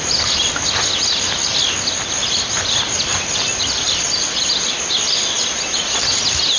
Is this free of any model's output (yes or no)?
yes